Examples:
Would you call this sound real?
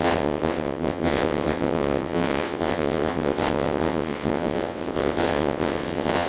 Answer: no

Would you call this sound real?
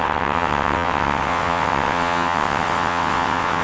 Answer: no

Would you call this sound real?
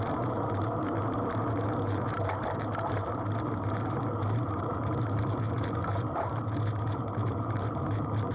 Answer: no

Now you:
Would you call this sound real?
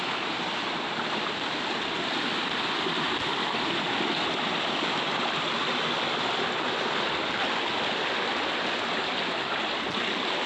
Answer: yes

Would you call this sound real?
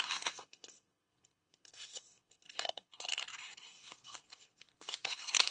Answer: no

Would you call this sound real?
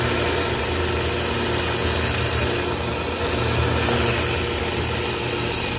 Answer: yes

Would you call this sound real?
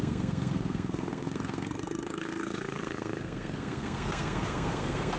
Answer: no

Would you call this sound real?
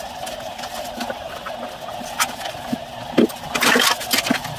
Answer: yes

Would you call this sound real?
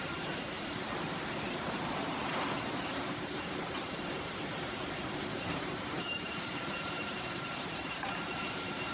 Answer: no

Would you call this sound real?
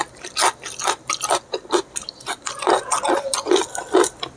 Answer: yes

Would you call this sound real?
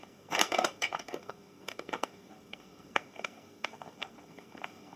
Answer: no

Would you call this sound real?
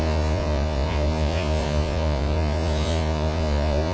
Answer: no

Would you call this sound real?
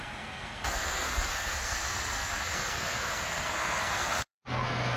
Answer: no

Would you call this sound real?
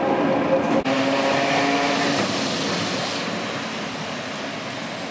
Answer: yes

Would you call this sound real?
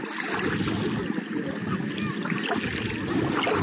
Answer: yes